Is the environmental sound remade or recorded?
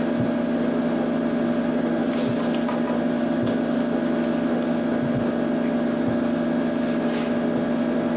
recorded